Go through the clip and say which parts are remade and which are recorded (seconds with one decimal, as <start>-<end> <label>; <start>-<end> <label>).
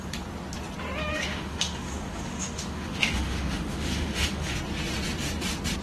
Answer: 0.0-1.1 recorded; 1.1-4.6 remade; 4.6-5.8 recorded